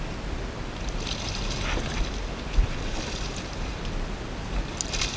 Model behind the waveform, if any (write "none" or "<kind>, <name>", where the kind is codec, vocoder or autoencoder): none